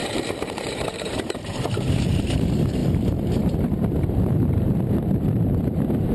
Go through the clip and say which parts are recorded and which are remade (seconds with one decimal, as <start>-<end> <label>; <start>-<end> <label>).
0.0-6.1 remade